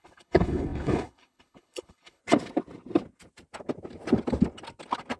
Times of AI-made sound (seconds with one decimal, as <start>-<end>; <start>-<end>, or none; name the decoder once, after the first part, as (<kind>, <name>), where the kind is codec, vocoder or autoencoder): 0.0-2.2 (codec, HILCodec)